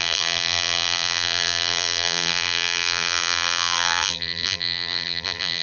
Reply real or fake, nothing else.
fake